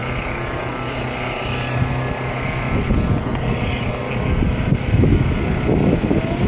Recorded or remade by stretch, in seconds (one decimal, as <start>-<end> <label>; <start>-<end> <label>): 0.0-6.5 recorded